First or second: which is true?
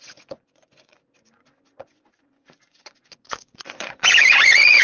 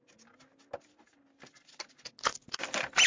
second